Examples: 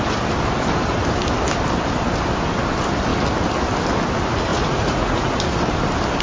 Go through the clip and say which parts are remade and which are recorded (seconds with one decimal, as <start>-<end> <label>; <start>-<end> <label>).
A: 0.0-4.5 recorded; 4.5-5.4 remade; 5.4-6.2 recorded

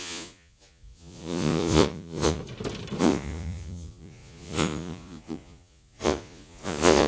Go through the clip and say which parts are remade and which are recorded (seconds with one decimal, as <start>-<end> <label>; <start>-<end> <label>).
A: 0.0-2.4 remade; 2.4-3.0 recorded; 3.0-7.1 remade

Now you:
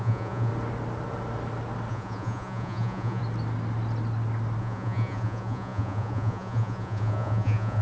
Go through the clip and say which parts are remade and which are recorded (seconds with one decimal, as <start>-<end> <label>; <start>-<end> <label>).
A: 0.0-0.5 remade; 0.5-1.9 recorded; 1.9-3.2 remade; 3.2-4.6 recorded; 4.6-7.8 remade